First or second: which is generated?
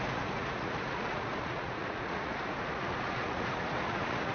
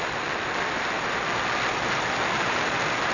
first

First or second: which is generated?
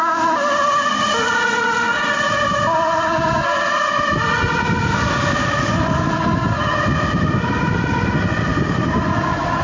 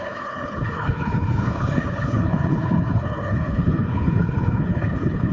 second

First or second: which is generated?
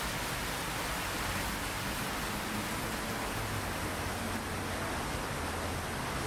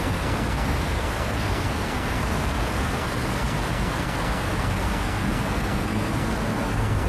second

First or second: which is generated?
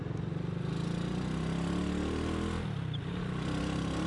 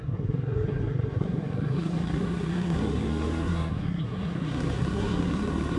second